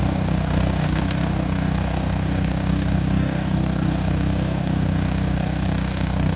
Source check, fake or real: fake